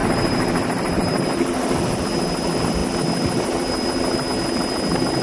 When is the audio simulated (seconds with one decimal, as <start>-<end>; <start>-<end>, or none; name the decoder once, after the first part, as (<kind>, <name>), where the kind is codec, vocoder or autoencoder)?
0.0-2.0 (vocoder, BigVGAN v2)